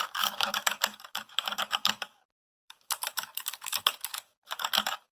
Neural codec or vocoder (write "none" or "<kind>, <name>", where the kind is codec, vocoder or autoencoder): codec, DAC